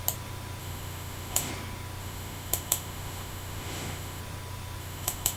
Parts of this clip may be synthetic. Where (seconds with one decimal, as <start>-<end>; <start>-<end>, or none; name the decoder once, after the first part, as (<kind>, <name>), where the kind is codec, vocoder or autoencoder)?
0.6-1.5 (autoencoder, DAC-VAE); 2.0-4.2; 4.8-5.4